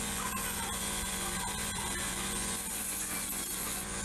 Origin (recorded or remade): remade